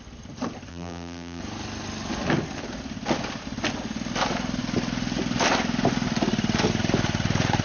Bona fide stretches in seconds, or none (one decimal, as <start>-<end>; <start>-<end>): 0.0-0.7; 1.4-7.6